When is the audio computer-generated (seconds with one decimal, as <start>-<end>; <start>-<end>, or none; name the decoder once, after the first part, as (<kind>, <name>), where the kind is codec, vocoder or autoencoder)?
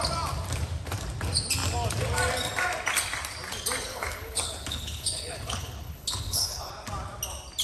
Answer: 3.9-6.7 (codec, HILCodec)